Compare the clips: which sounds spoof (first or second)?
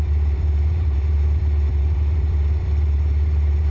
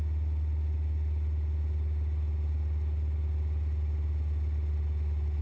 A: first